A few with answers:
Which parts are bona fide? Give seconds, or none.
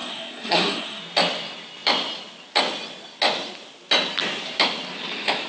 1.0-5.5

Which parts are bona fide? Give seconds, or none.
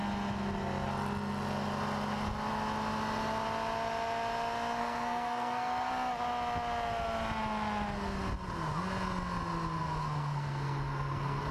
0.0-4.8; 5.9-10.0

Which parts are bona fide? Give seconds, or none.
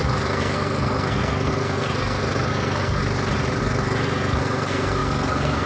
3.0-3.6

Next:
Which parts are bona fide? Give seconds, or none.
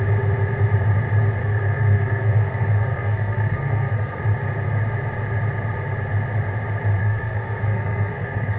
0.0-1.4; 4.2-7.0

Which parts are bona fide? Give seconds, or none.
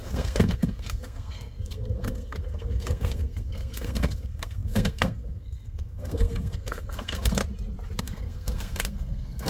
7.4-8.0